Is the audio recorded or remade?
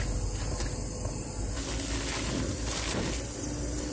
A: recorded